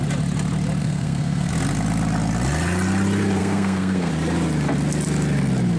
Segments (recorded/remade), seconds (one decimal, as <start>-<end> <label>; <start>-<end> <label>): 0.0-0.8 recorded; 0.8-1.5 remade; 1.5-3.4 recorded; 3.4-4.1 remade; 4.1-5.8 recorded